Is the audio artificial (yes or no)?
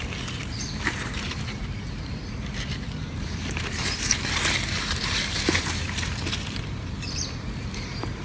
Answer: yes